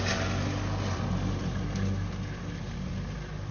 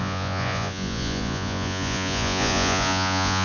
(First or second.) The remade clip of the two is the second